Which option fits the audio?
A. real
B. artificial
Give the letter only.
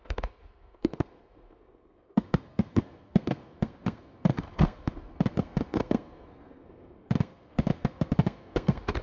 B